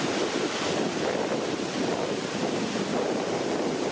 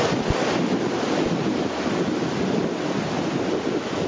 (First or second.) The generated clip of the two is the first